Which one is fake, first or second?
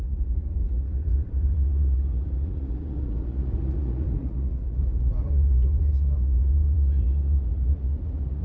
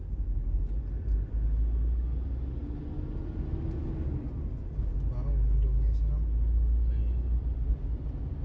first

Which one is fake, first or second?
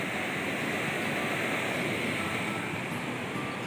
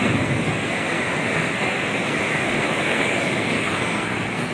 second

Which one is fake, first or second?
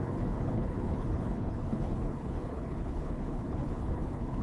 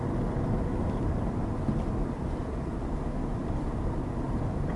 first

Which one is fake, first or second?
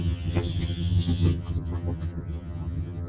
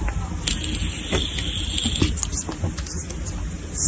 first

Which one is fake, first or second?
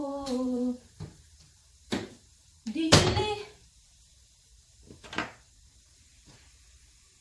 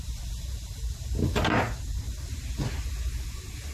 first